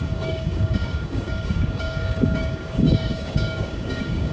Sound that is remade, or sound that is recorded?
remade